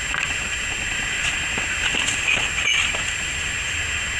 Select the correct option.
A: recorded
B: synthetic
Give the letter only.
A